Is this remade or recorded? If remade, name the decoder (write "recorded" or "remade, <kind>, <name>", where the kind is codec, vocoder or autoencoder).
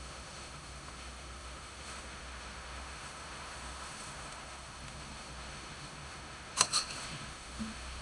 remade, autoencoder, DAC-VAE